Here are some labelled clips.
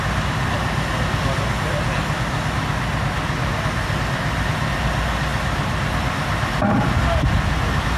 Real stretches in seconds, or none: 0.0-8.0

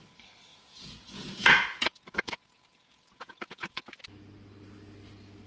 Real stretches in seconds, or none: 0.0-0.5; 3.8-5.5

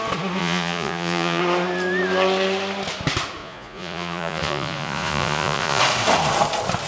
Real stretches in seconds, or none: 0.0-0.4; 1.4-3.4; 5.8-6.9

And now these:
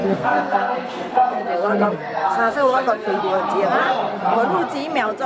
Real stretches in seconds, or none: 3.2-5.3

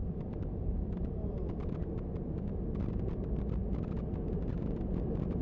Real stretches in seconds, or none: 1.7-5.4

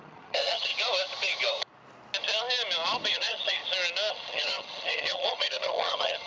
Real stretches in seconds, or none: 0.7-3.1; 3.6-4.1

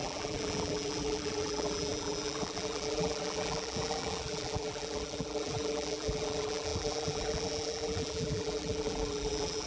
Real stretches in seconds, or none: none

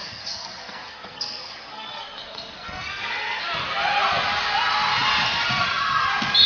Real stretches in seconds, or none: 3.4-6.5